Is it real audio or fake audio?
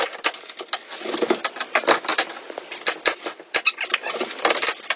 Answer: real